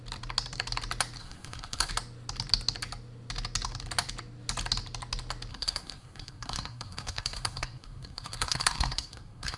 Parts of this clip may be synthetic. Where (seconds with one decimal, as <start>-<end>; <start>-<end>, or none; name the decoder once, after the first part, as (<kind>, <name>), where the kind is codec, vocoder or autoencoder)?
1.2-1.9 (codec, SNAC); 5.5-9.6